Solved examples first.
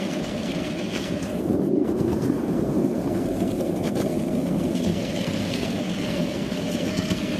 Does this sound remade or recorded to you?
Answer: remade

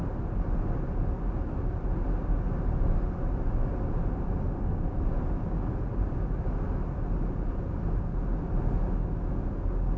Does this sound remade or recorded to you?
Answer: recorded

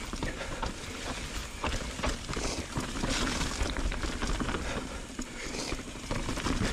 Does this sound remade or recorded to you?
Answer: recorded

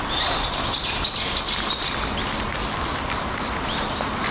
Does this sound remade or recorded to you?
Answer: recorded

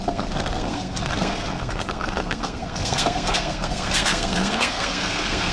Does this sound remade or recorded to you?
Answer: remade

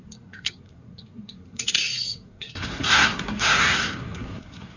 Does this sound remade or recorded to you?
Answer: remade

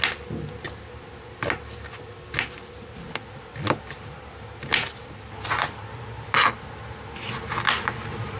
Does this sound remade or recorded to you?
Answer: recorded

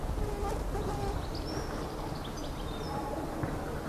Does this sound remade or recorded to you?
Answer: recorded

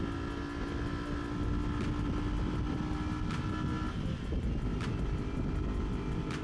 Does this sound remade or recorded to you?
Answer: recorded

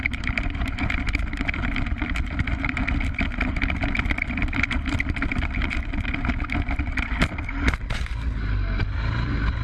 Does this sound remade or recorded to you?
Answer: recorded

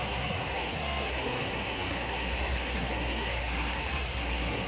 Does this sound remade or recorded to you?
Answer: remade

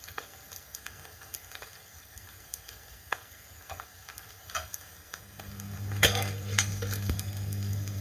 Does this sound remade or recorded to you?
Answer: remade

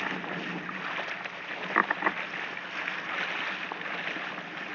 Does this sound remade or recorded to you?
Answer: recorded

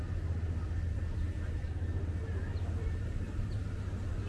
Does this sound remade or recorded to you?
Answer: recorded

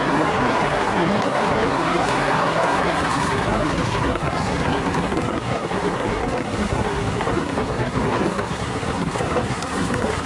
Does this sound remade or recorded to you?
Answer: remade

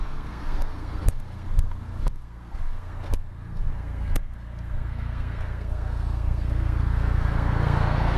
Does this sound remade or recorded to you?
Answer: remade